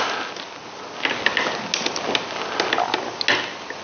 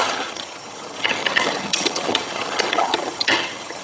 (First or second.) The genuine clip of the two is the first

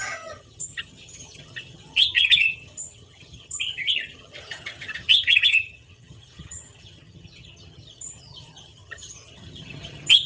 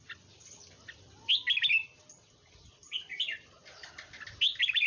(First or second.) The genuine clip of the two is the second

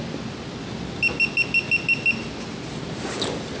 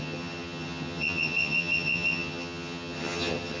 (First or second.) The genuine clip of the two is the first